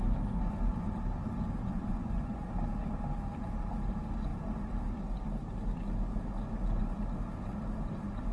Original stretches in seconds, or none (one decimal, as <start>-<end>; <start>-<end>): 0.0-1.6; 2.5-8.3